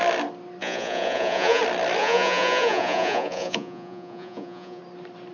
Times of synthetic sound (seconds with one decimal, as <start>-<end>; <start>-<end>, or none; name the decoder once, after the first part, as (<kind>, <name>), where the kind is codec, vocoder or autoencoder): 0.6-1.6 (vocoder, Vocos); 2.0-4.8